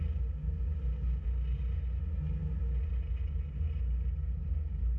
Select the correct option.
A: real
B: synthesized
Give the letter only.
A